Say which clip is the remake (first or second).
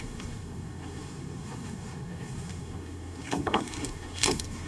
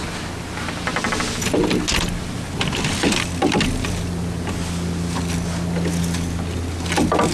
first